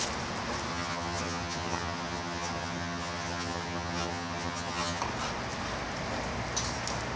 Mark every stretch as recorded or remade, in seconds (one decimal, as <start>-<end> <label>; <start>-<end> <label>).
0.0-0.7 recorded; 0.7-5.0 remade; 5.0-7.2 recorded